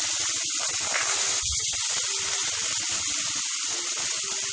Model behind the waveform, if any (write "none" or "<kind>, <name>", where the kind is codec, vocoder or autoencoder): none